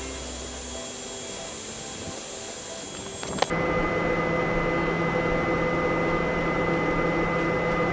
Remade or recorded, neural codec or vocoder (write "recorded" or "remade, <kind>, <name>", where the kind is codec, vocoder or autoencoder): recorded